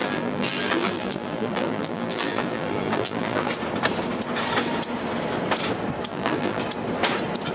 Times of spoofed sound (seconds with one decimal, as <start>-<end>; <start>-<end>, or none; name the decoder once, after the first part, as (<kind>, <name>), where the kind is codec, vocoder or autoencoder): 0.0-3.5 (vocoder, BigVGAN v2); 6.1-6.6